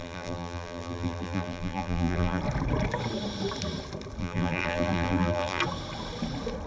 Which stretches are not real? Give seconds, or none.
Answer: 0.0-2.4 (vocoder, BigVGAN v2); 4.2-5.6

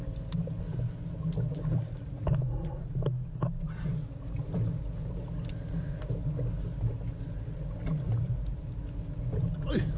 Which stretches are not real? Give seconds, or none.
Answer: 1.5-2.8 (vocoder, BigVGAN v2); 7.9-8.8